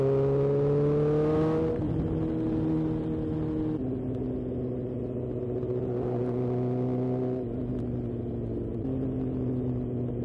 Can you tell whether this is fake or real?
real